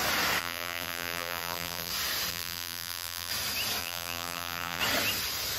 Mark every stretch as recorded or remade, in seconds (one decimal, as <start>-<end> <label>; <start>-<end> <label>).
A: 0.0-0.4 recorded; 0.4-1.9 remade; 1.9-2.3 recorded; 2.3-3.3 remade; 3.3-3.8 recorded; 3.8-4.8 remade; 4.8-5.6 recorded